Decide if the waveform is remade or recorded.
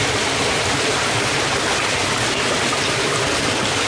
recorded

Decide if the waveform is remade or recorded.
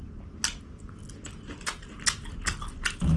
recorded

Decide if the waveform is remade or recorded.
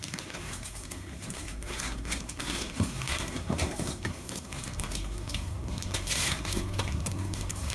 remade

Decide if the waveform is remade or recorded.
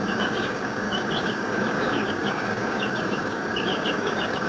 remade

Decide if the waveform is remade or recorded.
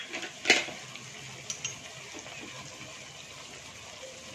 recorded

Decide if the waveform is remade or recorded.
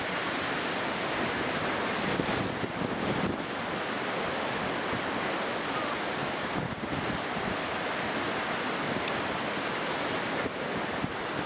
recorded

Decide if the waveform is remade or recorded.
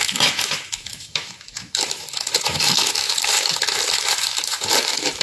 remade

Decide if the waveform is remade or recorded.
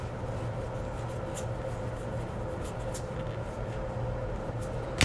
recorded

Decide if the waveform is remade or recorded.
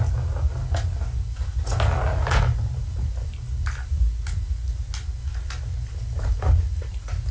recorded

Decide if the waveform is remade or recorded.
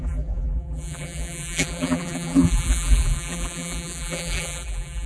remade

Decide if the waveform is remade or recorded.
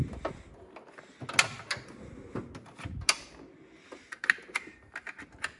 recorded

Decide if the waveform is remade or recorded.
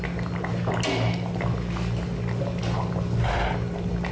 recorded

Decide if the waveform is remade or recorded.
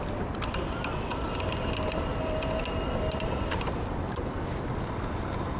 recorded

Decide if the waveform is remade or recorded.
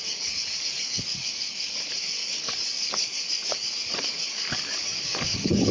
remade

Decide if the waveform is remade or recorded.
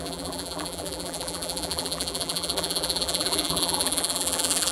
remade